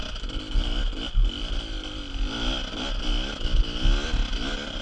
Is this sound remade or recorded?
recorded